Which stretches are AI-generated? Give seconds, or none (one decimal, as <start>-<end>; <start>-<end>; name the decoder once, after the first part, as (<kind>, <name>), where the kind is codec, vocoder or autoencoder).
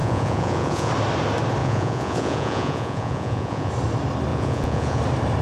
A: 0.0-0.9 (vocoder, Vocos); 1.6-3.7; 4.3-5.0